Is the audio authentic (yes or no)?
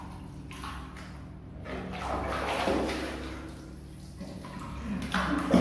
yes